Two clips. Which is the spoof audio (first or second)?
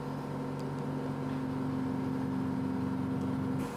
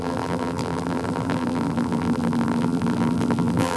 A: second